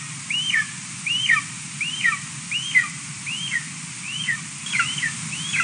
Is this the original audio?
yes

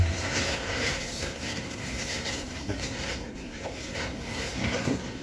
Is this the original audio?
no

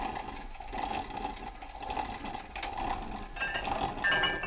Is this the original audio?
yes